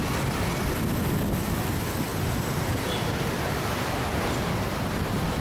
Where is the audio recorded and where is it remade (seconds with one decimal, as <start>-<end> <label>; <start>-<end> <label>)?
0.0-2.1 recorded; 2.1-5.4 remade